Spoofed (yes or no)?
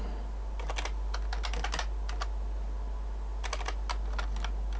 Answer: no